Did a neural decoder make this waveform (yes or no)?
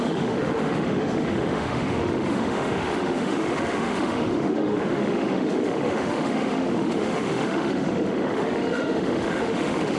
yes